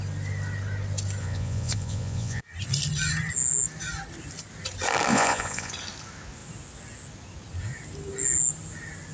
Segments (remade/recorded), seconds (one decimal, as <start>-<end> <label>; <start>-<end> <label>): 0.0-1.2 recorded; 1.2-2.4 remade; 2.4-5.1 recorded; 5.1-5.7 remade; 5.7-9.1 recorded